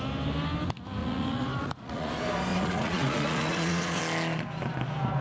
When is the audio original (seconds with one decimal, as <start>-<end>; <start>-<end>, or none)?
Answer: 0.0-1.0; 2.1-2.5; 4.0-5.2